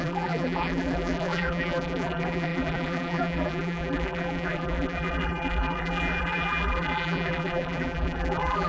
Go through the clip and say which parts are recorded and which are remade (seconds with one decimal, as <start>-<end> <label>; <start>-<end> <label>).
0.0-8.7 remade